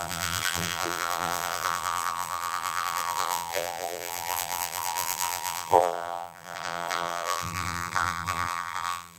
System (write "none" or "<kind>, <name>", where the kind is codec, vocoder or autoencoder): vocoder, BigVGAN v2